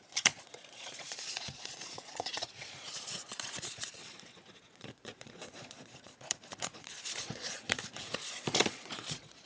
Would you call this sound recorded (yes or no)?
no